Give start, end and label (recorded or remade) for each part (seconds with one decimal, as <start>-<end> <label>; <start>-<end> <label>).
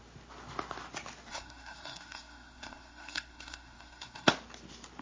0.0-1.3 recorded; 1.3-4.3 remade; 4.3-5.0 recorded